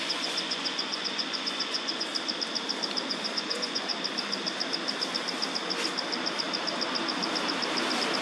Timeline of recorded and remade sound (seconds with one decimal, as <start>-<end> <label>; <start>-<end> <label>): 0.0-2.1 remade; 2.1-3.0 recorded; 3.0-3.9 remade; 3.9-8.2 recorded